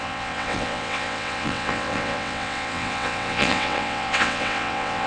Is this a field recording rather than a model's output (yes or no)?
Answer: no